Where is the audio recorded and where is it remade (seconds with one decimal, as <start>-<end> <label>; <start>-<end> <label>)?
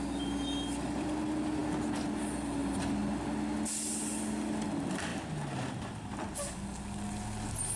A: 0.0-7.8 recorded